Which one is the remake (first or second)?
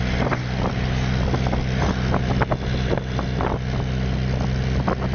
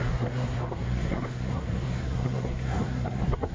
second